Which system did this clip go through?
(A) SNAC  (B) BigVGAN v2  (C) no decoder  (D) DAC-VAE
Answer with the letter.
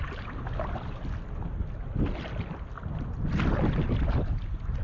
C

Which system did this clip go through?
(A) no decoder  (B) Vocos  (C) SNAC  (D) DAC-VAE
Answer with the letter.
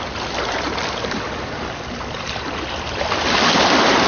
A